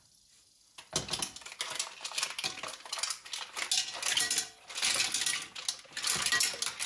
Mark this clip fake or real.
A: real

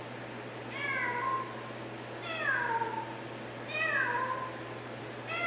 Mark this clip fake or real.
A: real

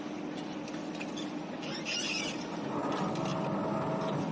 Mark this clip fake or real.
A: real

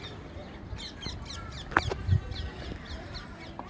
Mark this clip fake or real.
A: real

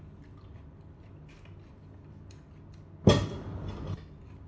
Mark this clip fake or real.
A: real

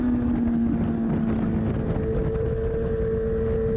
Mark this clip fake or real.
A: real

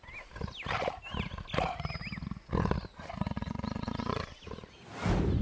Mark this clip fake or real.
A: real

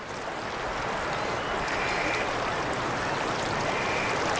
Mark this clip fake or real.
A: real